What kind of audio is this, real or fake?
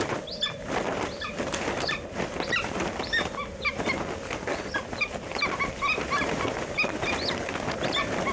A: real